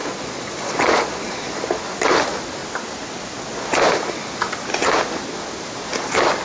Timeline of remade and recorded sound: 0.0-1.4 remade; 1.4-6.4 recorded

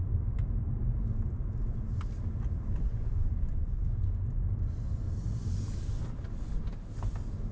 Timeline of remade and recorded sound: 0.0-2.9 recorded; 2.9-4.3 remade; 4.3-7.5 recorded

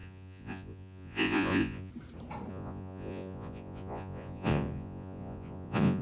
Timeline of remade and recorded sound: 0.0-1.9 remade; 1.9-2.5 recorded; 2.5-6.0 remade

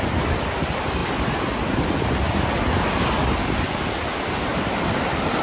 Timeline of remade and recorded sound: 0.0-5.4 recorded

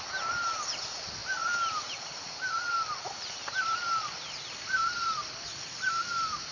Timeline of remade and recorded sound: 0.0-6.5 recorded

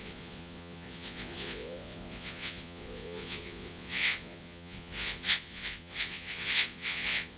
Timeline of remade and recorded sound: 0.0-7.4 remade

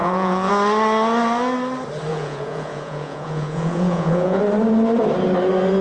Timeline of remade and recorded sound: 0.0-0.5 remade; 0.5-2.1 recorded; 2.1-4.4 remade; 4.4-5.8 recorded

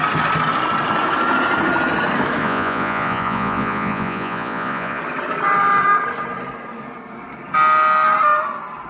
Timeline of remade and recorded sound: 0.0-2.4 recorded; 2.4-5.0 remade; 5.0-8.9 recorded